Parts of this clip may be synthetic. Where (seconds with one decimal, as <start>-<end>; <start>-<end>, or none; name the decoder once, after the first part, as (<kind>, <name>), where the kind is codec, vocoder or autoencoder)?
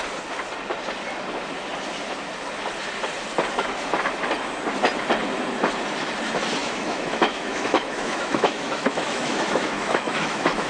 6.6-10.7 (autoencoder, DAC-VAE)